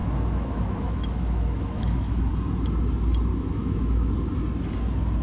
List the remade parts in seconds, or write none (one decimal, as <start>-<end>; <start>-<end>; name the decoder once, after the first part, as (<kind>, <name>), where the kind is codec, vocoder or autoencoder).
0.0-2.3 (autoencoder, DAC-VAE); 3.3-4.1